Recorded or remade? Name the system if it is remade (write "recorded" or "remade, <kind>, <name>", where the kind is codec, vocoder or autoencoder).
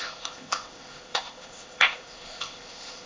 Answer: remade, codec, ZipCodec